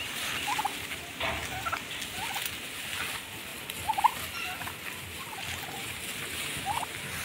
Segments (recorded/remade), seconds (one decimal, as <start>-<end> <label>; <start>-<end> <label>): 0.0-7.2 recorded